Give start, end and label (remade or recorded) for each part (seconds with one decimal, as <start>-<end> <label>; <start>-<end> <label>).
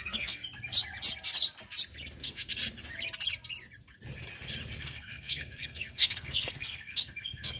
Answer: 0.0-0.4 remade; 0.4-2.2 recorded; 2.2-2.6 remade; 2.6-4.8 recorded; 4.8-7.6 remade